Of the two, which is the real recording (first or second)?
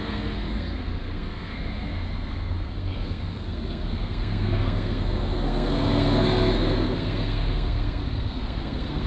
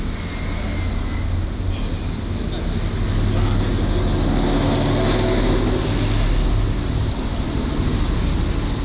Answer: second